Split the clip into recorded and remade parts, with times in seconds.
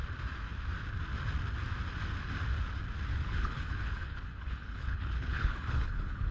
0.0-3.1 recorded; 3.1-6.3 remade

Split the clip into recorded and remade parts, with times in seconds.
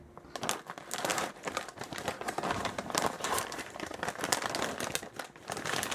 0.0-1.1 recorded; 1.1-4.4 remade; 4.4-5.9 recorded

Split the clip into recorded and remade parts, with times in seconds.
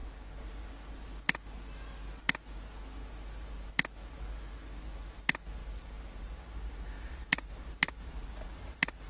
0.0-0.6 remade; 0.6-5.6 recorded; 5.6-9.1 remade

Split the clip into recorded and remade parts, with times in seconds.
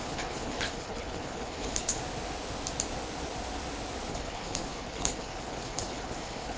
0.0-2.0 remade; 2.0-4.1 recorded; 4.1-6.6 remade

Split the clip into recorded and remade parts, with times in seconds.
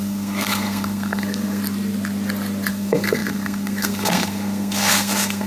0.0-1.6 remade; 1.6-2.7 recorded; 2.7-5.5 remade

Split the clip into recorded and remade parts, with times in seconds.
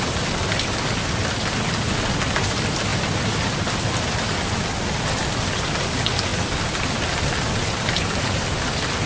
0.0-9.1 recorded